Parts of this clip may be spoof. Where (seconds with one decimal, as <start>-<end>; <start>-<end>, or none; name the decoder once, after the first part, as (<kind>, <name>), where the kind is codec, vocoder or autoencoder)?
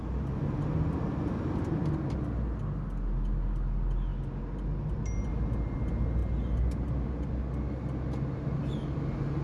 none